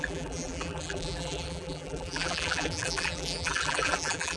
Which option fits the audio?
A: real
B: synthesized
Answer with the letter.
B